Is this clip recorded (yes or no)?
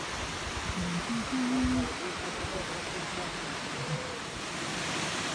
yes